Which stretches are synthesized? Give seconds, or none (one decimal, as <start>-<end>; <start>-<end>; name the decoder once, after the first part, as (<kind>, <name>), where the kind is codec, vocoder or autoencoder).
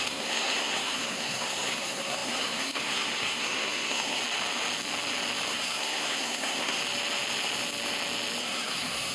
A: 0.0-4.2 (codec, SNAC); 5.5-6.8; 8.4-9.1